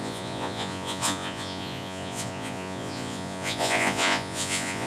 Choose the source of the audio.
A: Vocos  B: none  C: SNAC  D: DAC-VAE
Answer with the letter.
A